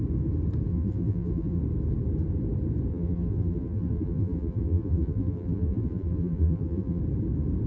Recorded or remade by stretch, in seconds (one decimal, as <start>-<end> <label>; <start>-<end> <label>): 0.0-0.7 recorded; 0.7-1.6 remade; 1.6-2.9 recorded; 2.9-7.0 remade; 7.0-7.7 recorded